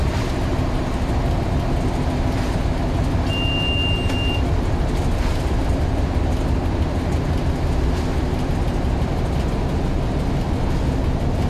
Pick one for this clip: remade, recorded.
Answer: recorded